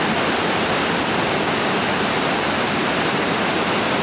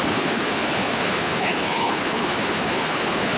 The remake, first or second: second